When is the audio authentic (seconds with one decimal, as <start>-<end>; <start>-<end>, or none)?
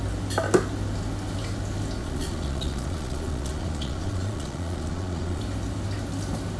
0.0-2.0; 5.4-6.6